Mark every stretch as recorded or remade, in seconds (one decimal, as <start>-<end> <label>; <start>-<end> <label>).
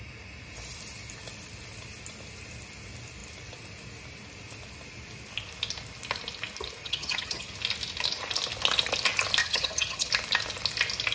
0.0-6.8 recorded; 6.8-7.5 remade; 7.5-9.4 recorded; 9.4-10.1 remade; 10.1-11.1 recorded